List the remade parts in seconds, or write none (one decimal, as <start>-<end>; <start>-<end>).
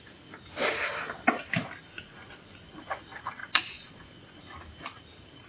1.9-2.8; 3.4-4.4